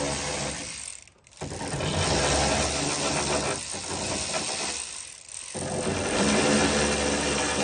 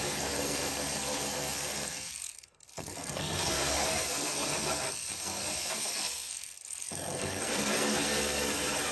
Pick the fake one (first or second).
second